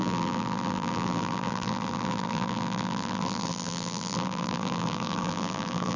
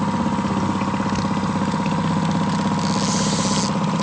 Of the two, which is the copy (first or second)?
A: first